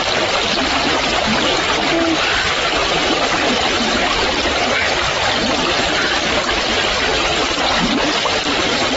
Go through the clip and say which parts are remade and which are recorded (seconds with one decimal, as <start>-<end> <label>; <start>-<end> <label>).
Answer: 0.0-2.8 recorded; 2.8-4.5 remade; 4.5-9.0 recorded